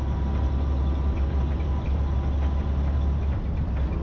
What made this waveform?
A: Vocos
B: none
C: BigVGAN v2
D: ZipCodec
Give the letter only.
B